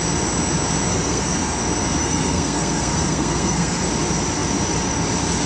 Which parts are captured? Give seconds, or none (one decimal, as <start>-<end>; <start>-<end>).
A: 0.0-0.9; 1.6-2.0; 3.8-5.5